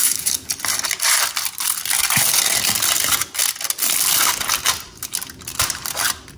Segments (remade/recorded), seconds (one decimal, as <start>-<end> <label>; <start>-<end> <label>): 0.0-0.5 remade; 0.5-6.4 recorded